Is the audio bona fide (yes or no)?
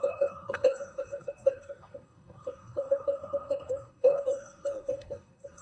no